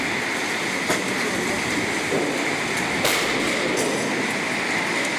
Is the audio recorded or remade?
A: recorded